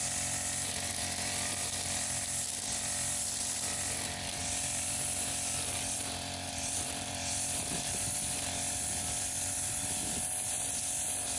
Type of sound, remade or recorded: remade